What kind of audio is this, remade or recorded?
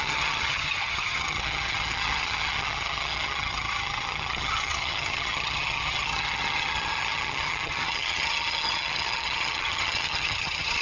remade